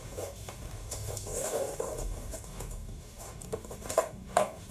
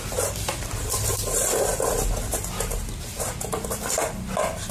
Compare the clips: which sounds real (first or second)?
second